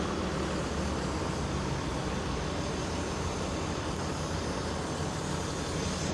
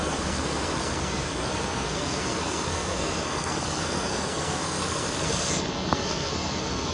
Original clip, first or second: first